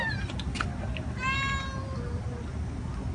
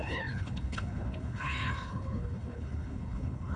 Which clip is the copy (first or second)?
second